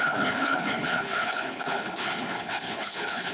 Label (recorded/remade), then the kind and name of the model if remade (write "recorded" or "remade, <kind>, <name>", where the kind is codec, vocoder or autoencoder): remade, codec, HILCodec